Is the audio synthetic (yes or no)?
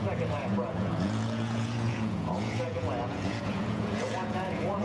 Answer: yes